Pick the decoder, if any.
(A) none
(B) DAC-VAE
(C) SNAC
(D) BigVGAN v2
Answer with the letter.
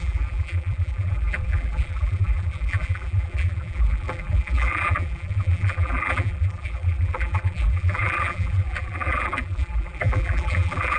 D